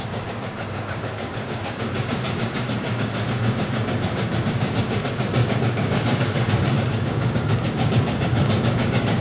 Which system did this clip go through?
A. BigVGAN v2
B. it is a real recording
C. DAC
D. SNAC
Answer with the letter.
C